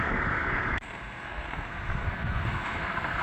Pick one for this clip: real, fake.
fake